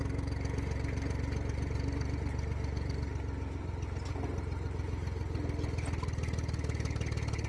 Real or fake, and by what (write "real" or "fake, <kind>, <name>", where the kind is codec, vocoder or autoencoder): real